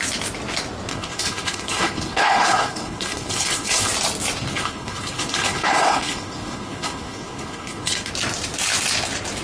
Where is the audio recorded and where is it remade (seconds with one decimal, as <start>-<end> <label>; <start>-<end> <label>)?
0.0-0.9 recorded; 0.9-3.9 remade; 3.9-4.5 recorded; 4.5-8.1 remade; 8.1-9.4 recorded